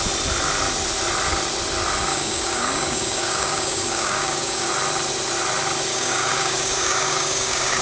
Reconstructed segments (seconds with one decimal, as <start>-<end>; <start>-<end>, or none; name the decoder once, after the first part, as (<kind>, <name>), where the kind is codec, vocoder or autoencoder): 2.1-4.7 (codec, DAC); 5.9-7.8